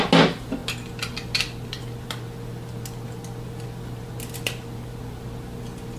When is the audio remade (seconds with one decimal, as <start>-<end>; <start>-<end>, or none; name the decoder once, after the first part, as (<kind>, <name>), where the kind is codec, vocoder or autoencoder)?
none